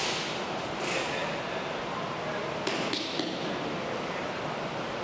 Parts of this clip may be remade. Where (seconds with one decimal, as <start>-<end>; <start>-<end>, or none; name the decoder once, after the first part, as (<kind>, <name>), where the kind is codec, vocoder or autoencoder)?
none

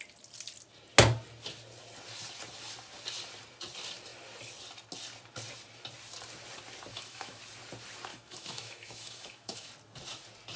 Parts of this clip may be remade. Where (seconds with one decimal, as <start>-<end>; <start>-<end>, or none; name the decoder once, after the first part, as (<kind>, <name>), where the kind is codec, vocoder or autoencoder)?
6.9-7.4 (autoencoder, DAC-VAE); 8.1-9.7

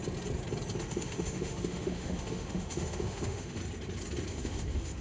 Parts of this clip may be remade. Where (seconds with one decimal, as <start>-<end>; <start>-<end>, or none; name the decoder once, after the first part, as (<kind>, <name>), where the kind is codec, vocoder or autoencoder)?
0.8-3.6 (autoencoder, DAC-VAE); 4.3-5.0

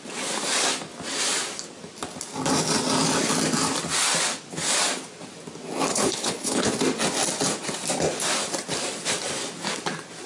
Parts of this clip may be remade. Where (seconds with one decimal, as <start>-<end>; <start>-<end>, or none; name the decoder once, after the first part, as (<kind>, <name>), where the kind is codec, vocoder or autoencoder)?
5.9-6.7 (codec, HILCodec)

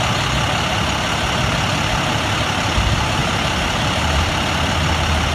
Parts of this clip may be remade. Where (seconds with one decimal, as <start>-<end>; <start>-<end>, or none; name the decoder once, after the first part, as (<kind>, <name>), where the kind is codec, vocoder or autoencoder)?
3.2-4.2 (vocoder, BigVGAN v2)

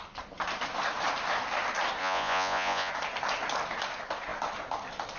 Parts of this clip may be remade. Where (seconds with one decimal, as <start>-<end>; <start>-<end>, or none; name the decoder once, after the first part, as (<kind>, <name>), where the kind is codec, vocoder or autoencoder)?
2.0-2.9 (vocoder, Vocos)

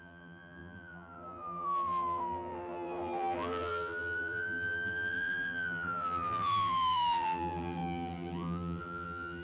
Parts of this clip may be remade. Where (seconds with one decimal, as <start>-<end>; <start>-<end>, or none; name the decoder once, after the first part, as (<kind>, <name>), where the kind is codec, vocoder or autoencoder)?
0.0-9.4 (vocoder, BigVGAN v2)

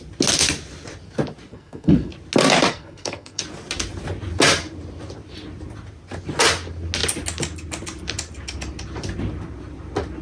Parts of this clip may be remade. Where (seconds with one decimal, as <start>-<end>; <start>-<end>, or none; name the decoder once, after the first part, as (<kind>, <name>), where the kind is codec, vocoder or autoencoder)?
1.5-2.1 (codec, SNAC); 2.7-3.4